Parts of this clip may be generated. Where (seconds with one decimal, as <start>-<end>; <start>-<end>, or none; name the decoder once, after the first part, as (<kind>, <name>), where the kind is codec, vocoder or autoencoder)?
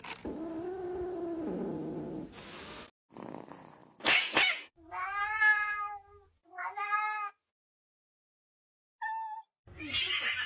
none